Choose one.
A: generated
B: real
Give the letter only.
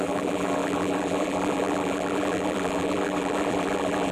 A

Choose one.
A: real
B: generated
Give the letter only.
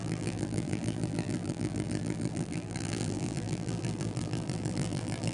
B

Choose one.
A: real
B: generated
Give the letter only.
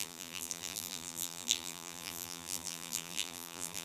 B